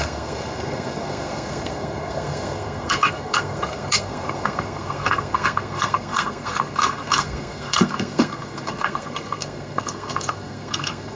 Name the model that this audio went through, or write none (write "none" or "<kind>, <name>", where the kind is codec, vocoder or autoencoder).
codec, SNAC